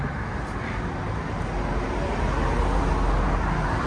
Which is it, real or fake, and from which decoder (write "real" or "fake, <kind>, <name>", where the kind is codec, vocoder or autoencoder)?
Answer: real